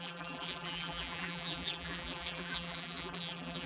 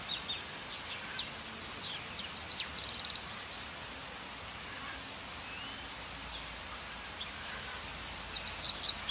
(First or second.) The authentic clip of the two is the second